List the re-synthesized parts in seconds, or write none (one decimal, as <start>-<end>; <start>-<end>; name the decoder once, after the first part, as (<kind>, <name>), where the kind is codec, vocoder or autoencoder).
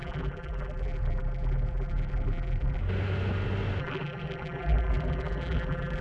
0.0-2.8 (vocoder, BigVGAN v2); 3.8-6.0